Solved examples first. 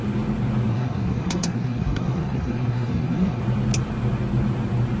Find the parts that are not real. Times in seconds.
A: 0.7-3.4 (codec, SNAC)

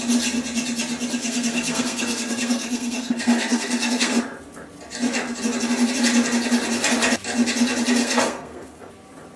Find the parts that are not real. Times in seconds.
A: 1.2-4.2 (codec, SNAC); 8.0-8.9

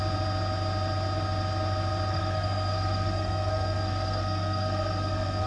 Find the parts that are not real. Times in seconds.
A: 2.1-5.5 (codec, SNAC)

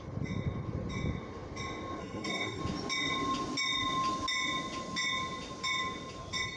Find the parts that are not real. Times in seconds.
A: 2.0-2.6 (codec, SNAC)

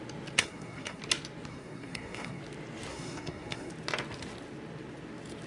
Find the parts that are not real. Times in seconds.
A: 0.4-1.0 (codec, SNAC); 1.5-2.4; 2.9-3.7

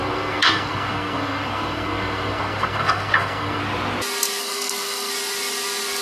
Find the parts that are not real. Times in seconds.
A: 0.0-3.6 (codec, SNAC); 4.4-5.1

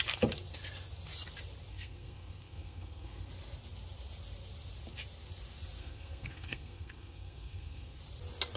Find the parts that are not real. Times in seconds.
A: 1.7-3.3 (codec, SNAC); 5.8-8.0